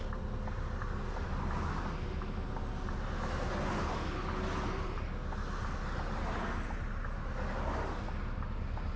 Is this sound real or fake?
real